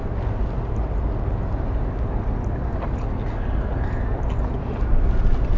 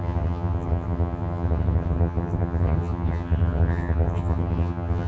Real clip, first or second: first